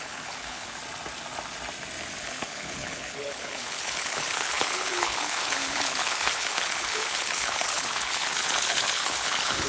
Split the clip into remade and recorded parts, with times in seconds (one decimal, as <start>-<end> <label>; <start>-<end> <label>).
0.0-0.8 remade; 0.8-2.2 recorded; 2.2-9.7 remade

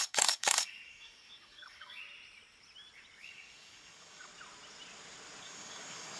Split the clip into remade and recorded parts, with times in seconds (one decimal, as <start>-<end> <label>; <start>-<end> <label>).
0.0-2.0 remade; 2.0-3.2 recorded; 3.2-4.3 remade; 4.3-5.4 recorded; 5.4-6.2 remade

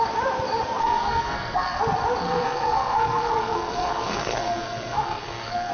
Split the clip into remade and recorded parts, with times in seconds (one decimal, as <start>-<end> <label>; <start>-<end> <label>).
0.0-0.8 recorded; 0.8-1.8 remade; 1.8-2.2 recorded; 2.2-5.7 remade

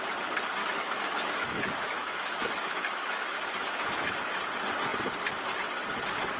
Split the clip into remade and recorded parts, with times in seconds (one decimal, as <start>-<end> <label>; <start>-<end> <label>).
0.0-0.6 recorded; 0.6-4.4 remade; 4.4-6.4 recorded